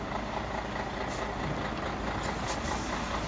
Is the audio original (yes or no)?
yes